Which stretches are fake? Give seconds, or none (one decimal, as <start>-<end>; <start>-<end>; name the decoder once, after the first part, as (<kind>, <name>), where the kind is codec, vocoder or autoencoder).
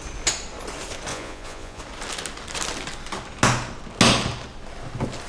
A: 1.1-1.8 (vocoder, Vocos)